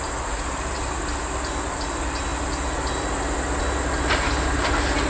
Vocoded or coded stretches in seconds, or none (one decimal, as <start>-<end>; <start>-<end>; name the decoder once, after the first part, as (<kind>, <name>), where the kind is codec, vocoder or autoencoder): none